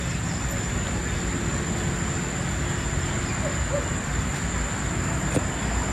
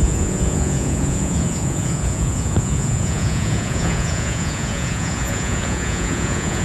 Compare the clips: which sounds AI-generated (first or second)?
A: second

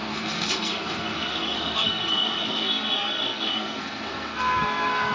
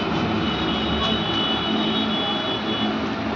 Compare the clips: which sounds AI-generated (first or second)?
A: first